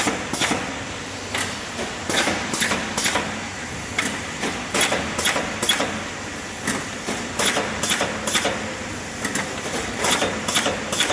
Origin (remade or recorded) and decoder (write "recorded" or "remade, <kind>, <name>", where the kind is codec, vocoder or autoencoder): recorded